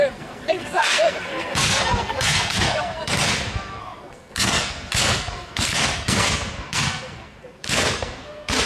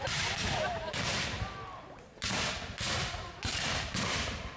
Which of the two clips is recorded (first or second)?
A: second